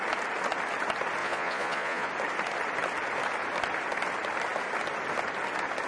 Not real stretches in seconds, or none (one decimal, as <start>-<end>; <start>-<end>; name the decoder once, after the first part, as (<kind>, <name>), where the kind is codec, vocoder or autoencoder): 1.2-2.1 (vocoder, Vocos)